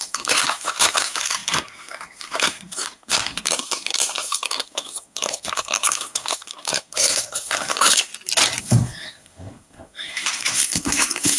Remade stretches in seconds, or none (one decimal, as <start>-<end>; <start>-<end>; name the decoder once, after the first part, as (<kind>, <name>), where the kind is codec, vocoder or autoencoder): 0.0-8.1 (codec, SNAC); 8.6-11.4